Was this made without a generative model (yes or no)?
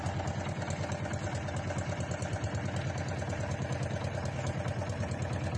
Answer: yes